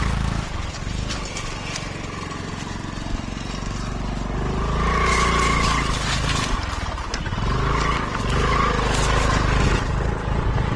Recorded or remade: recorded